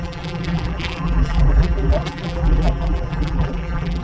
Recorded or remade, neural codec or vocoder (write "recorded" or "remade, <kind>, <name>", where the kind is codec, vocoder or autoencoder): remade, vocoder, BigVGAN v2